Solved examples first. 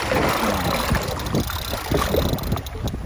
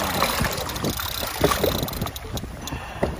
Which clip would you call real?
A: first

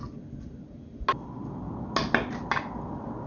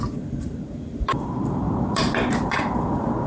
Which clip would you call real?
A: first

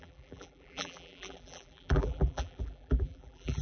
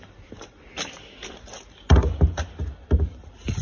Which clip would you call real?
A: second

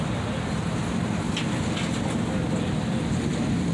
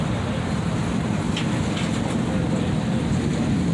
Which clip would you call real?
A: first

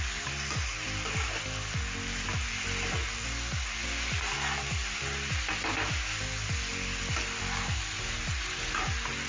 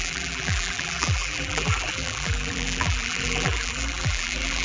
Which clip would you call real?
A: first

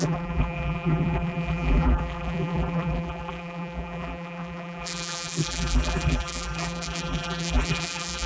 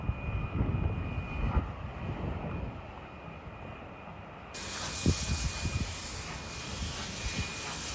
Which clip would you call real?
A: second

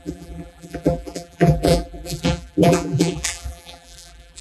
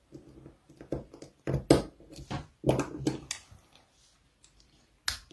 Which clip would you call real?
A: second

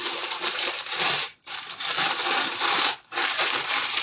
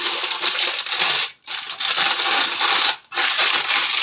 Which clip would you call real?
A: second